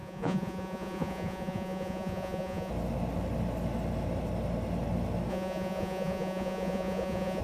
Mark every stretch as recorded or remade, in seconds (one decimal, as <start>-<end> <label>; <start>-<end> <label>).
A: 0.0-2.7 remade; 2.7-5.3 recorded; 5.3-7.4 remade